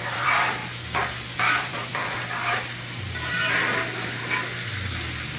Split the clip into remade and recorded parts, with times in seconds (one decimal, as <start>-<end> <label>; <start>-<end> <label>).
0.0-0.6 remade; 0.6-1.6 recorded; 1.6-2.0 remade; 2.0-5.4 recorded